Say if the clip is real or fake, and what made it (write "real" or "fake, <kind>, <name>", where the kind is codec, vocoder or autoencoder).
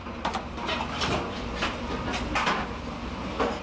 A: real